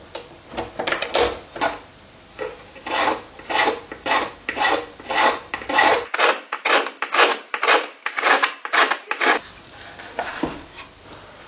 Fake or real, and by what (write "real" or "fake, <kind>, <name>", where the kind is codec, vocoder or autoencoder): real